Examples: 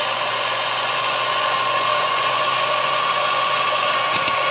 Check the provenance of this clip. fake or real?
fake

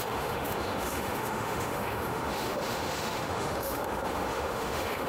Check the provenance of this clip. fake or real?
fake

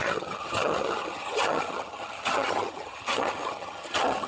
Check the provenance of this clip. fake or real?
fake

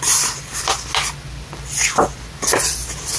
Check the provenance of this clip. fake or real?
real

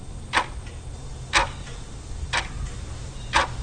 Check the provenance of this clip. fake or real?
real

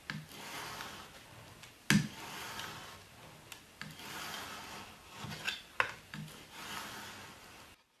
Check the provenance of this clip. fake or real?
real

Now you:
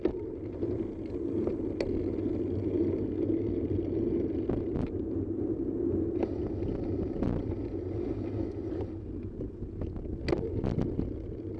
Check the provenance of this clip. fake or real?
real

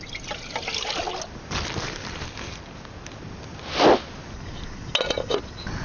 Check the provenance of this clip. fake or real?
real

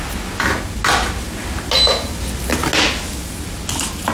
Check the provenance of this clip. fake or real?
real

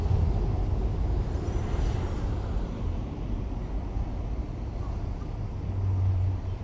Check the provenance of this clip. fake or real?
real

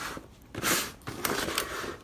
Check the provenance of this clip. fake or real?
real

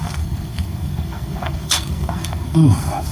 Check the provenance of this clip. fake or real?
fake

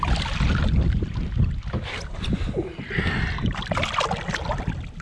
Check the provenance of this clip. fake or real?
real